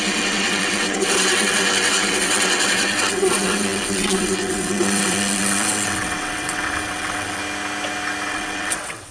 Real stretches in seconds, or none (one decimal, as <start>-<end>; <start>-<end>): 7.4-8.3